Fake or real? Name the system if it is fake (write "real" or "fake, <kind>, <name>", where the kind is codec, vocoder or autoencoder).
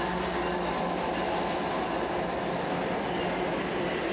real